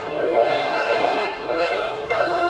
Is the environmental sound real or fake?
fake